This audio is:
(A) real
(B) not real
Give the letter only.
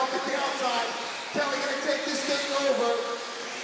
A